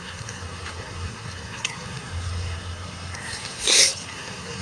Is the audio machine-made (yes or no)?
yes